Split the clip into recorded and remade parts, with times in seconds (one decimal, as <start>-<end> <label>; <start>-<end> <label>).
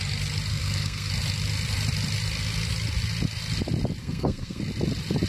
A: 0.0-0.5 recorded; 0.5-1.1 remade; 1.1-4.0 recorded; 4.0-4.6 remade; 4.6-5.3 recorded